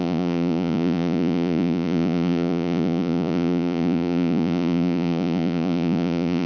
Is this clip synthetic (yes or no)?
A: yes